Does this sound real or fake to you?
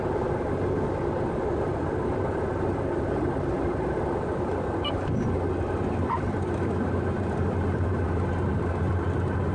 real